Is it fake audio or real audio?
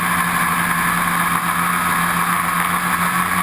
real